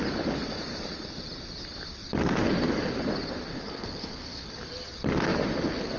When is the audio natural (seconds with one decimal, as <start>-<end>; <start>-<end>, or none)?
0.0-3.5; 4.5-6.0